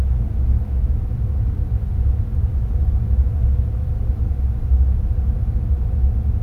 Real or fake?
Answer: real